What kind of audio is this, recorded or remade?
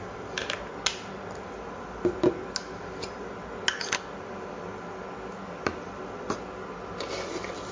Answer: recorded